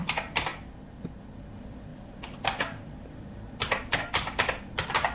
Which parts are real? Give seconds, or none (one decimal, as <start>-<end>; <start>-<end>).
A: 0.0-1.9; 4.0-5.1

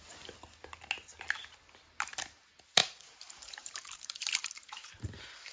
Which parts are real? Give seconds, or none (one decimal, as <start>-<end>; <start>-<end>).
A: 0.0-2.8

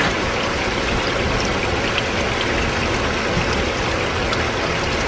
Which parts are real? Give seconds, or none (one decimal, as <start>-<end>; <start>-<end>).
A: 1.5-4.6

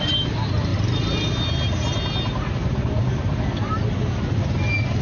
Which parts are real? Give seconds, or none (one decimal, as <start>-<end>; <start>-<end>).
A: 0.0-5.0

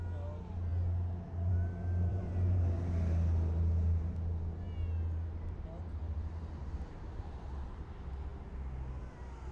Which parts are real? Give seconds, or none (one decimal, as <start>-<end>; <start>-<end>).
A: 0.0-2.1; 2.6-6.6; 7.8-9.5

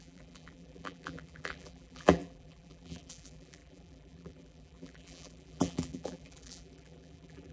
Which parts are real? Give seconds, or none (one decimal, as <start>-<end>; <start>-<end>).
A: none